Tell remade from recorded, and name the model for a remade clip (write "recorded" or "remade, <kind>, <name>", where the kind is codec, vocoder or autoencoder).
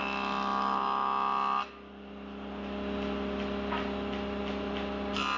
recorded